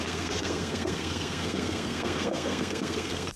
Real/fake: fake